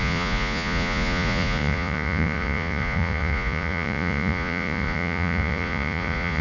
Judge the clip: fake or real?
fake